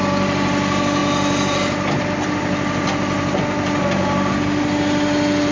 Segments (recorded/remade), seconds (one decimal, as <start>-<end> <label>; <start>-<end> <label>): 0.0-5.5 recorded

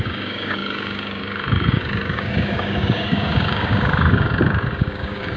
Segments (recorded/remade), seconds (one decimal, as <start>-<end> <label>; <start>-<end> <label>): 0.0-5.4 remade